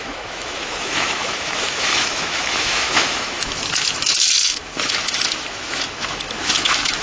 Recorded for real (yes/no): no